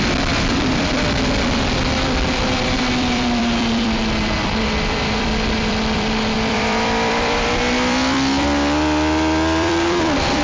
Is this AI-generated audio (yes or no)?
yes